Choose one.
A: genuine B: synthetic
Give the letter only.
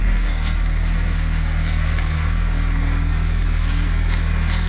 B